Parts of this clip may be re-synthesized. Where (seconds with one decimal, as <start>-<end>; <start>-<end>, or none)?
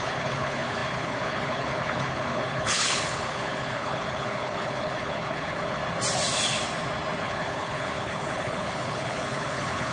0.0-5.8; 7.2-9.9